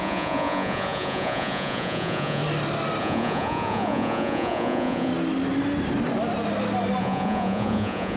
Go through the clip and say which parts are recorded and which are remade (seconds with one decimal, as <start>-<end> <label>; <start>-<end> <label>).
0.0-2.4 remade; 2.4-3.0 recorded; 3.0-5.1 remade; 5.1-7.0 recorded; 7.0-8.2 remade